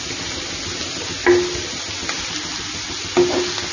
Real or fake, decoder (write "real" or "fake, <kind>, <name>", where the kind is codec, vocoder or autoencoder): real